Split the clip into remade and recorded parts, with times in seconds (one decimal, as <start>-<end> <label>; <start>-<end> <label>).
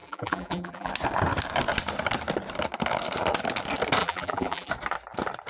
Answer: 0.0-0.9 remade; 0.9-4.0 recorded; 4.0-4.7 remade; 4.7-5.5 recorded